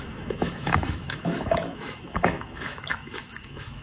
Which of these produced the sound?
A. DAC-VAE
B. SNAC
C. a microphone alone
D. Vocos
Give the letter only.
A